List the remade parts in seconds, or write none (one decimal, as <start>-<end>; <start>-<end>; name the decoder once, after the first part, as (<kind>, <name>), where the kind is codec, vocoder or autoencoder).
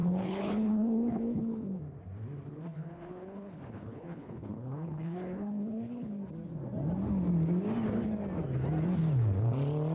0.0-1.8 (codec, HILCodec); 2.5-6.1